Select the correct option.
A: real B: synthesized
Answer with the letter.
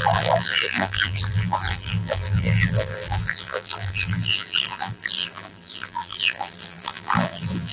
B